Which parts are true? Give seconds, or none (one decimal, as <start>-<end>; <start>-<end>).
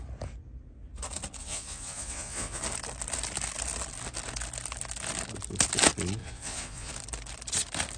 0.0-1.4; 2.6-6.2; 6.9-8.0